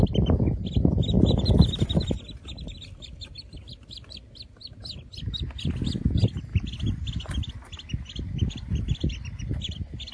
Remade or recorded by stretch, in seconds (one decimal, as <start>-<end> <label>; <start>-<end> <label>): 0.0-10.1 recorded